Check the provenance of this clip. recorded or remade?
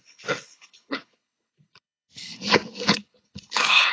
remade